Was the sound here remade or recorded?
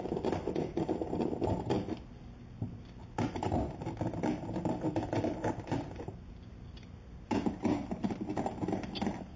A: recorded